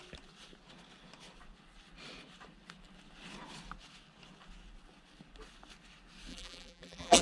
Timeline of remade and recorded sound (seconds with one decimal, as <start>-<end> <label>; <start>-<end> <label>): 0.0-6.3 recorded; 6.3-7.2 remade